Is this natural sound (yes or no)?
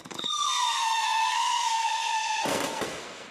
no